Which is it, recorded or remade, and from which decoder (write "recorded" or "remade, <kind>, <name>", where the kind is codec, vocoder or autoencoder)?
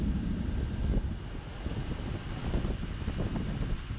recorded